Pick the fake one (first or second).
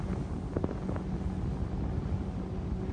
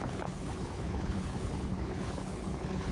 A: second